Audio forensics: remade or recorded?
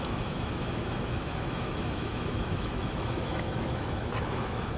remade